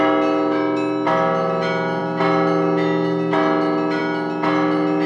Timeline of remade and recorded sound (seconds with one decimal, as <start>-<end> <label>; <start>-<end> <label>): 0.0-5.1 recorded